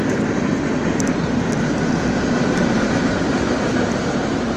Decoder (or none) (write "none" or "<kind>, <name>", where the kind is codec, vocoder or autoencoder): none